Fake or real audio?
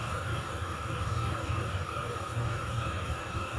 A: fake